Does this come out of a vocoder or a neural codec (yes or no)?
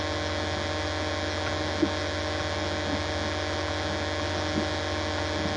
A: no